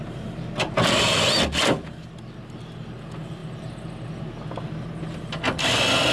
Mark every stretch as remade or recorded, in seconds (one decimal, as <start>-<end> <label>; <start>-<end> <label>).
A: 0.0-6.1 recorded